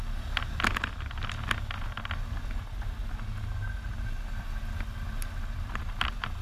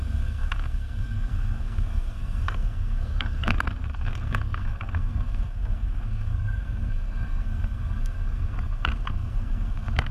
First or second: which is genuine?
first